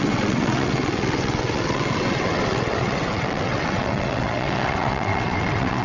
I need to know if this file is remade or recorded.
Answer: remade